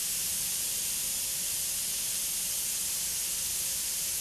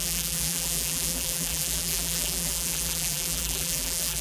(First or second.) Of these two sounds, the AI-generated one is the second